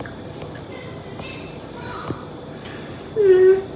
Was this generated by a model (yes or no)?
no